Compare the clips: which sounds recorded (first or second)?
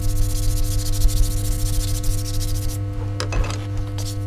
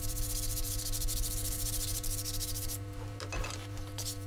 first